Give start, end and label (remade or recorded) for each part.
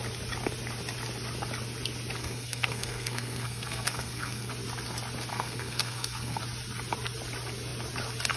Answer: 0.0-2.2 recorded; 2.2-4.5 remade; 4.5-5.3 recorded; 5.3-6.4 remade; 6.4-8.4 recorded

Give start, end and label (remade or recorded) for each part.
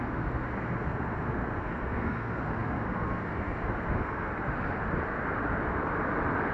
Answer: 0.0-4.3 remade; 4.3-6.5 recorded